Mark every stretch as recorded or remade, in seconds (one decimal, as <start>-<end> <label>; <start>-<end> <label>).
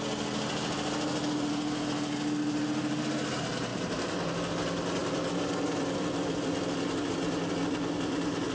0.0-5.0 recorded; 5.0-6.9 remade; 6.9-8.5 recorded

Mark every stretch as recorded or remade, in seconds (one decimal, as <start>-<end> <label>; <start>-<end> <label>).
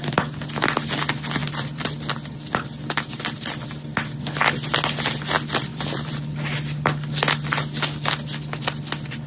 0.0-1.4 recorded; 1.4-2.1 remade; 2.1-5.7 recorded; 5.7-6.3 remade; 6.3-9.3 recorded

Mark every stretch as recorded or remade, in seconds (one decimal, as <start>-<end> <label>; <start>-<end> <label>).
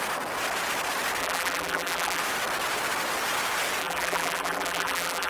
0.0-1.2 recorded; 1.2-2.2 remade; 2.2-3.8 recorded; 3.8-5.3 remade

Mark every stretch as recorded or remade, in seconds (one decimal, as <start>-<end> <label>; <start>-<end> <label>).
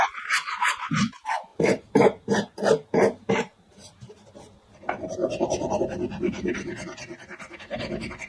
0.0-1.5 recorded; 1.5-4.3 remade; 4.3-5.2 recorded; 5.2-5.8 remade; 5.8-8.3 recorded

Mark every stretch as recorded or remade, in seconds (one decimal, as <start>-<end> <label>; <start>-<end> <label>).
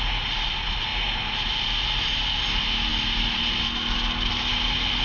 0.0-5.0 recorded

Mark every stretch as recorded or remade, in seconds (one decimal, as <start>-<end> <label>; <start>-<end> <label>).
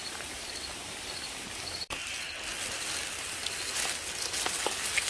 0.0-2.0 remade; 2.0-5.1 recorded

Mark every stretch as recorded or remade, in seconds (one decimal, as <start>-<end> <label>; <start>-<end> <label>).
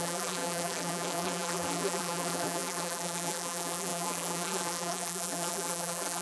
0.0-6.2 remade